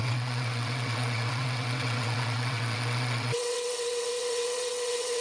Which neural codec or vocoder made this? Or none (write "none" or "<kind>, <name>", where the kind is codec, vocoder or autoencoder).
vocoder, WaveNeXt